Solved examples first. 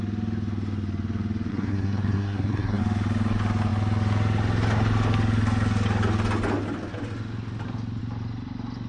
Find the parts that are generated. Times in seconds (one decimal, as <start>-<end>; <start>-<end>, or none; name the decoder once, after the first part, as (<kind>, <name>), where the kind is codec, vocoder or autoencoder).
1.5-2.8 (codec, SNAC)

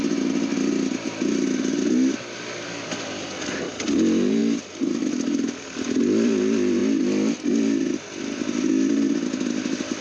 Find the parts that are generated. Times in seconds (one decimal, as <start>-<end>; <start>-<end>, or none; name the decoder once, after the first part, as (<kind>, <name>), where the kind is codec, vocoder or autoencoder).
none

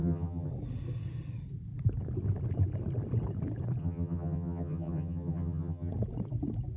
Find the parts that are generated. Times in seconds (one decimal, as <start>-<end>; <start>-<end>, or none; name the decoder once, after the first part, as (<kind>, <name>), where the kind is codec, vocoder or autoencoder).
0.0-0.5 (vocoder, HiFi-GAN); 3.8-5.9

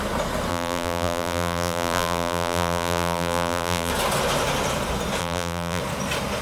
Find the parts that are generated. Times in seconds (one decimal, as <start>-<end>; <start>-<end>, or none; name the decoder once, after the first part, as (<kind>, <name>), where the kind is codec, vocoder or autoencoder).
0.5-3.9 (vocoder, BigVGAN v2); 5.2-5.8